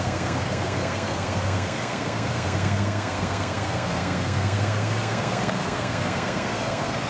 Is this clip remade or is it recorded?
remade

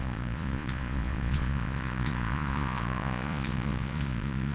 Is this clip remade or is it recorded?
remade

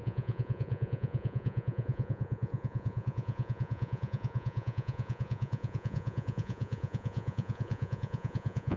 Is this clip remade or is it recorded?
remade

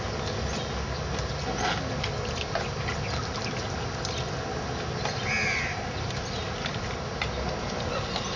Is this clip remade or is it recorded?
recorded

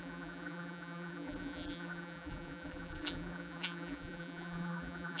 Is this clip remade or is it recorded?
remade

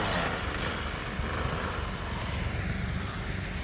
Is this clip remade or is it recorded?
recorded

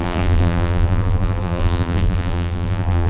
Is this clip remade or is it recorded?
remade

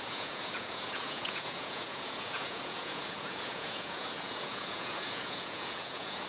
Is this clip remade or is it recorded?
remade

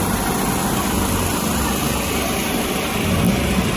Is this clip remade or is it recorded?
recorded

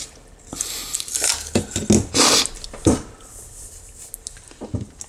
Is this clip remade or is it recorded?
recorded